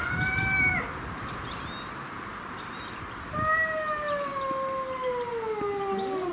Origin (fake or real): real